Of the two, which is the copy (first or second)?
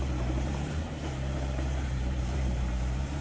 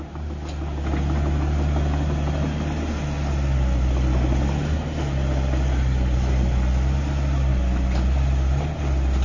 first